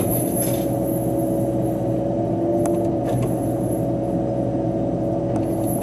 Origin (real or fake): real